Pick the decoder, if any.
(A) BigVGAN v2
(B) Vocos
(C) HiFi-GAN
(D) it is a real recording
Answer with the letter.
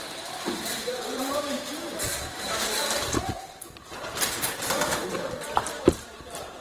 A